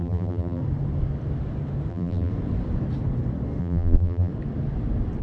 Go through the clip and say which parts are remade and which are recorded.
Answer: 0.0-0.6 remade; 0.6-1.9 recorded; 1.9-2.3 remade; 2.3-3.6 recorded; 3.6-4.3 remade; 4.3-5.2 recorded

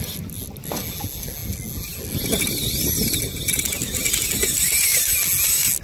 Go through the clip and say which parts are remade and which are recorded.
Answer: 0.0-5.8 recorded

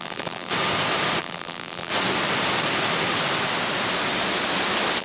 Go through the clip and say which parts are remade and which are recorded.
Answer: 0.0-0.5 remade; 0.5-1.2 recorded; 1.2-1.9 remade; 1.9-5.0 recorded

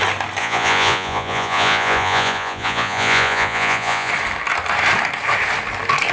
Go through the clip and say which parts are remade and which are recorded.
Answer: 0.0-0.4 recorded; 0.4-4.1 remade; 4.1-6.1 recorded

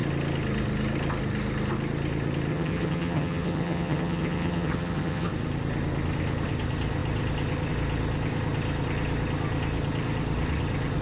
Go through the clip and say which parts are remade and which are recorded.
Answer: 0.0-2.5 recorded; 2.5-5.3 remade; 5.3-11.0 recorded

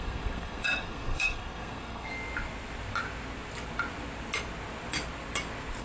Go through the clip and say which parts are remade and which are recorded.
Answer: 0.0-2.1 remade; 2.1-5.8 recorded

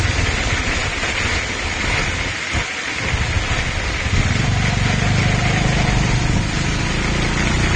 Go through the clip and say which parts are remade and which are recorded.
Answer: 0.0-7.8 recorded